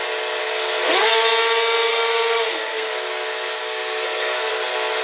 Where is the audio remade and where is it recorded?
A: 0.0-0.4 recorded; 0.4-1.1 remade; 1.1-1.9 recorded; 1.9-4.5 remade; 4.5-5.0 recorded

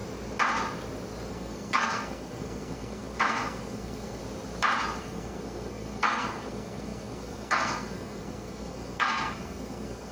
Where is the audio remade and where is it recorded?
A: 0.0-1.3 recorded; 1.3-4.2 remade; 4.2-5.0 recorded; 5.0-10.1 remade

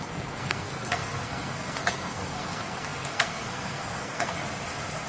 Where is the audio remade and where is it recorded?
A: 0.0-4.4 remade; 4.4-5.1 recorded

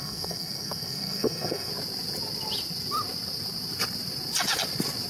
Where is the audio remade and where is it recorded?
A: 0.0-1.7 remade; 1.7-5.1 recorded

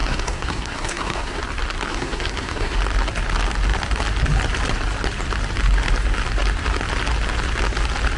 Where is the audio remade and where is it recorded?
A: 0.0-1.4 remade; 1.4-1.9 recorded; 1.9-2.8 remade; 2.8-8.2 recorded

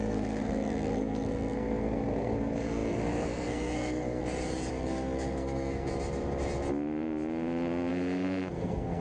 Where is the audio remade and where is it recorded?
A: 0.0-4.2 remade; 4.2-4.7 recorded; 4.7-5.9 remade; 5.9-7.9 recorded; 7.9-9.0 remade

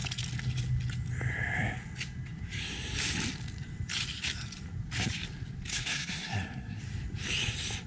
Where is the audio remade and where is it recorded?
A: 0.0-5.7 recorded; 5.7-6.8 remade; 6.8-7.9 recorded